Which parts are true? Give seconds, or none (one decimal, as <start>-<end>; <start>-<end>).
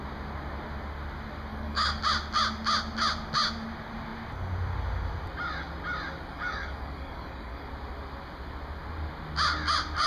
0.0-1.5; 2.0-6.3; 7.7-10.1